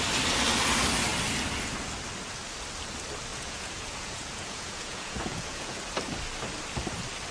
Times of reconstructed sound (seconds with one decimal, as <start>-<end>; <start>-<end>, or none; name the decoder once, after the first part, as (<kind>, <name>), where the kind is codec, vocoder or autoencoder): 3.3-5.9 (vocoder, Vocos)